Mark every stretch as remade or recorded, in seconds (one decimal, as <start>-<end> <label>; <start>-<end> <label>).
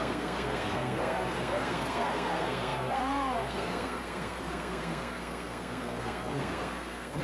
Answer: 0.0-7.2 remade